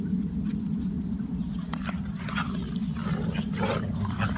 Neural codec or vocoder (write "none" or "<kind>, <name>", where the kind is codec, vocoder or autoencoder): none